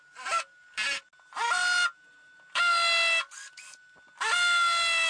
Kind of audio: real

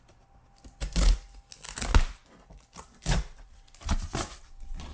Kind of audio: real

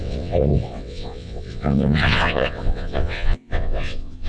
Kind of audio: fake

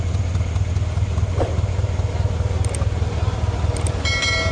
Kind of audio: real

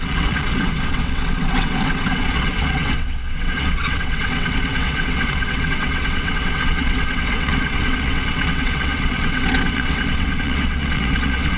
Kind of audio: fake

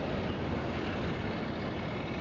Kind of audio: real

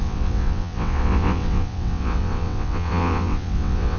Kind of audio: fake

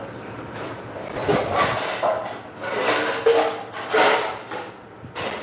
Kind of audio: real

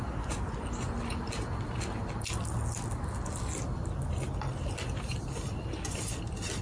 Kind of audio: real